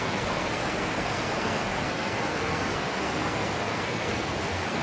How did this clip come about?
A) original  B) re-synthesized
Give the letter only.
B